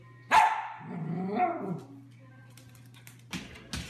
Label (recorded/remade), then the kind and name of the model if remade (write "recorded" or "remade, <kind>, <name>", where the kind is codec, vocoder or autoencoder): recorded